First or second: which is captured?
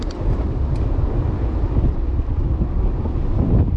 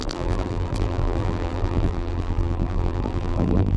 first